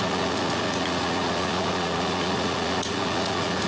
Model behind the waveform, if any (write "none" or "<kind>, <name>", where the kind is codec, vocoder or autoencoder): vocoder, Vocos